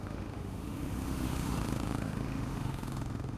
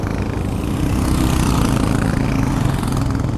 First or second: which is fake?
first